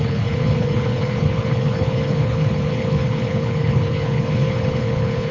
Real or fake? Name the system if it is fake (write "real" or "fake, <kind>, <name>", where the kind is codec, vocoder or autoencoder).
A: fake, codec, HILCodec